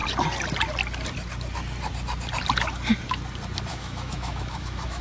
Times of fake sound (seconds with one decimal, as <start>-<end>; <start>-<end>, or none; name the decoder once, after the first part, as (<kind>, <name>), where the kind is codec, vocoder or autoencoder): 3.7-5.0 (autoencoder, DAC-VAE)